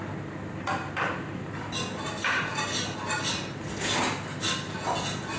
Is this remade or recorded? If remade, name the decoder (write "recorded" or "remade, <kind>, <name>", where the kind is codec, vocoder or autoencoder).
recorded